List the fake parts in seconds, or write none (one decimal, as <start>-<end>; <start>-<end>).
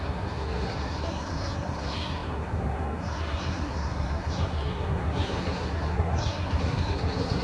0.0-7.4